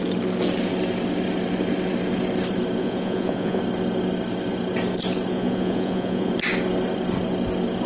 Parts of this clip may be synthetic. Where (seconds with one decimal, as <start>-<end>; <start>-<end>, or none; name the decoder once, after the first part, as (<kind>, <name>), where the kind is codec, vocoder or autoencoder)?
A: 2.8-3.6 (vocoder, Vocos); 5.3-6.3